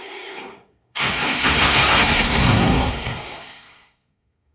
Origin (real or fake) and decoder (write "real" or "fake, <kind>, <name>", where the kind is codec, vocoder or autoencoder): fake, codec, SNAC